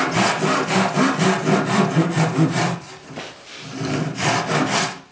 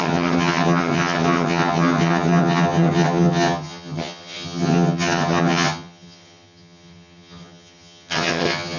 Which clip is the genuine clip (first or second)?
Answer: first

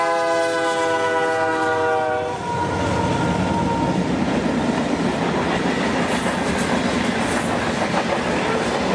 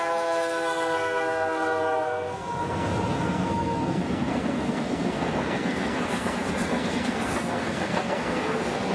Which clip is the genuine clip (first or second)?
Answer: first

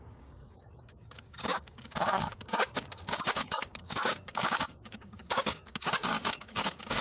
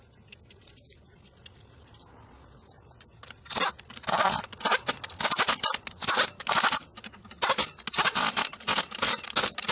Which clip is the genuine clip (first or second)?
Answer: second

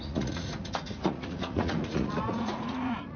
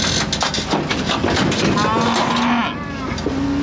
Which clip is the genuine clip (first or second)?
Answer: second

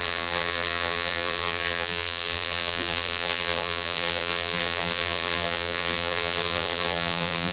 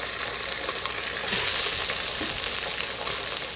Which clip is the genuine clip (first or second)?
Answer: second